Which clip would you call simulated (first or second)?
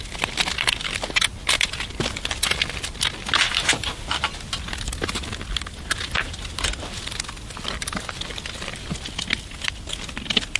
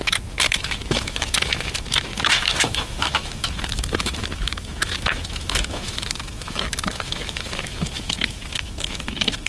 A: second